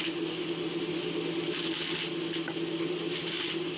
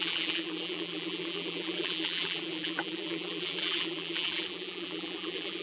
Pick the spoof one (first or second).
second